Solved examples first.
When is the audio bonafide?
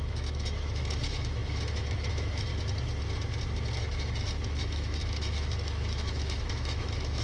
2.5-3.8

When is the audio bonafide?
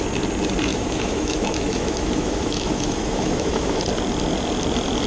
0.0-0.7; 3.8-5.1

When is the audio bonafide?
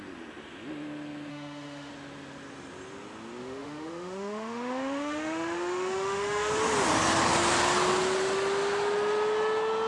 0.0-1.3; 1.9-3.4; 6.5-9.9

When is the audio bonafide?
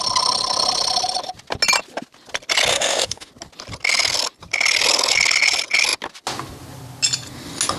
0.0-2.7; 3.3-7.8